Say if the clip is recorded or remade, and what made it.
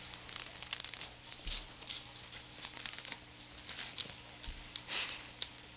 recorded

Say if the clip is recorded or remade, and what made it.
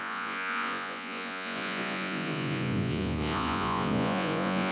remade, vocoder, Vocos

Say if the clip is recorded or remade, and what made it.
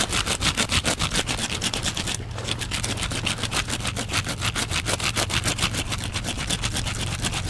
recorded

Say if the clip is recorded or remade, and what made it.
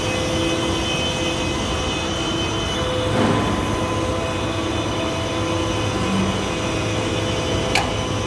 recorded